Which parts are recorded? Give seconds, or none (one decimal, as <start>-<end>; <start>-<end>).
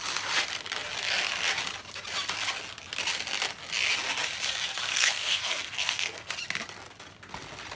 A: 0.0-4.9; 6.3-7.7